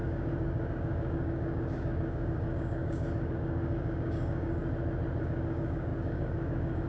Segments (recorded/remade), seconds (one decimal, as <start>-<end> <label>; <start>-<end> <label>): 0.0-4.6 remade; 4.6-5.2 recorded; 5.2-6.9 remade